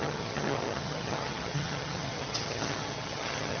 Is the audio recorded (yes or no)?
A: no